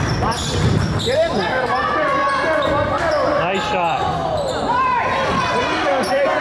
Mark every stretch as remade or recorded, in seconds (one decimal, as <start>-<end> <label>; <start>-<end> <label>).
0.0-4.2 recorded; 4.2-5.0 remade; 5.0-6.4 recorded